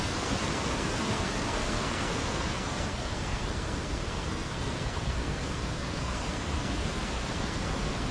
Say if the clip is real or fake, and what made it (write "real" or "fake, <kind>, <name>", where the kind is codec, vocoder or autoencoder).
fake, codec, SNAC